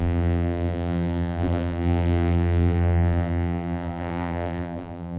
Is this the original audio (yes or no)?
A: no